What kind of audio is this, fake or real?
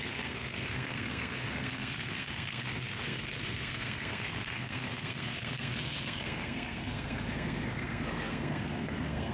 fake